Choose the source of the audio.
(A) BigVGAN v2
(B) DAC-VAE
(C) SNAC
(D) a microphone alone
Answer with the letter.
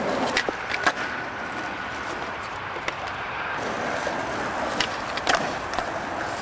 A